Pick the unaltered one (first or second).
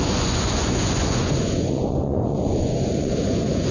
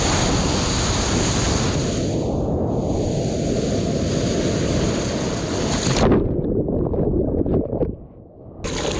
second